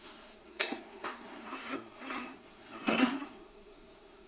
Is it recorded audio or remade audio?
remade